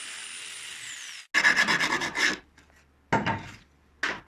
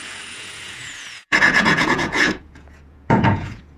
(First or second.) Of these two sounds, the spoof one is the second